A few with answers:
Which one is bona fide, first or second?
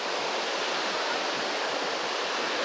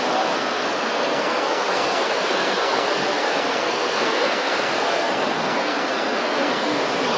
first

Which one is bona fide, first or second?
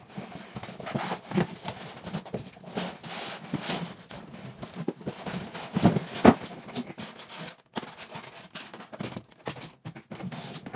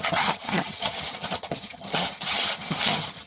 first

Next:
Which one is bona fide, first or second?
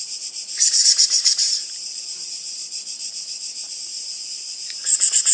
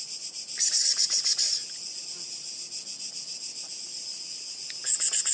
second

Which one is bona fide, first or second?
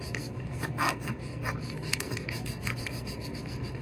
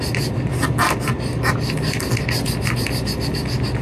second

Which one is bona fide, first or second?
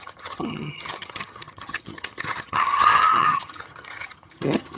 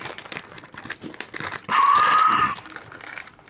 second